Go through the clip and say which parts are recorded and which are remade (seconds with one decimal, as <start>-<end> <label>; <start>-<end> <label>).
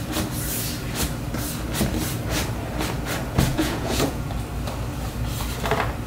0.0-3.5 recorded; 3.5-4.3 remade; 4.3-6.1 recorded